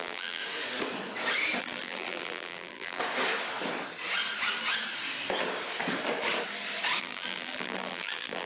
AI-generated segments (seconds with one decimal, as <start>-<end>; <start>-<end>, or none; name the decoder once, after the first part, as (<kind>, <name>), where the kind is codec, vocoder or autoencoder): 0.0-0.4 (vocoder, BigVGAN v2); 1.6-3.0; 7.0-8.5